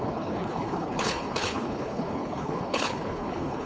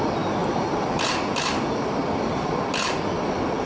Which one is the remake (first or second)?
first